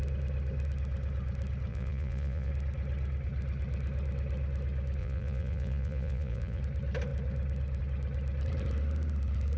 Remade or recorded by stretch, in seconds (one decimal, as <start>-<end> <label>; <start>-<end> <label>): 0.0-1.7 recorded; 1.7-2.5 remade; 2.5-5.0 recorded; 5.0-6.6 remade; 6.6-9.6 recorded